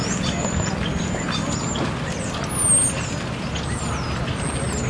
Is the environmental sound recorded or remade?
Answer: recorded